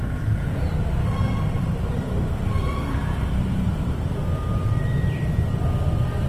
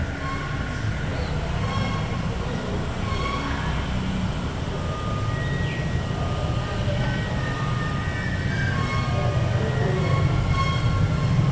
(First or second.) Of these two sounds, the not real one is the first